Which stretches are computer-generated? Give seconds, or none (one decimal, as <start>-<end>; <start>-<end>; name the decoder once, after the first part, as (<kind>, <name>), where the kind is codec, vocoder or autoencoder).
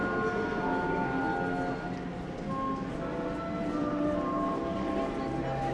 3.8-4.6 (vocoder, BigVGAN v2)